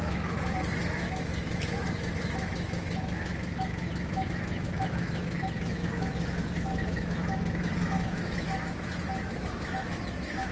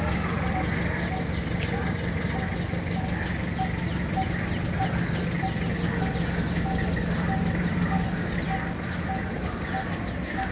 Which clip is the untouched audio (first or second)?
second